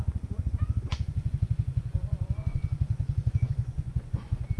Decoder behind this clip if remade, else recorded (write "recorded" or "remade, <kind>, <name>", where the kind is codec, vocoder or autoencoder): remade, vocoder, Vocos